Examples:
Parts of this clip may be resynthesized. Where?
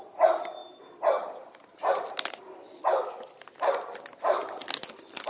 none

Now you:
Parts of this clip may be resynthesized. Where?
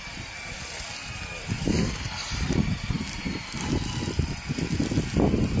0.0-3.3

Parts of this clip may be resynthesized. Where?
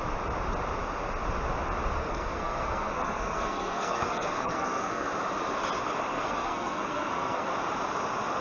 2.0-5.1; 6.1-7.5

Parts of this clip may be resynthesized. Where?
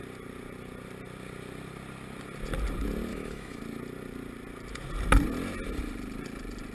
3.1-3.6